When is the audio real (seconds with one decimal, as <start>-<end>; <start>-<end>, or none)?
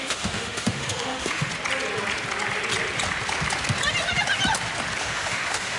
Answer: 1.5-5.0